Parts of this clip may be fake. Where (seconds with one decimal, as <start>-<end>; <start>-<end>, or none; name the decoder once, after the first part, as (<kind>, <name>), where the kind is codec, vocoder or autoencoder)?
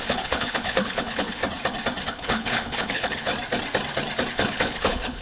0.0-1.4 (codec, HILCodec); 2.1-3.3; 4.3-5.2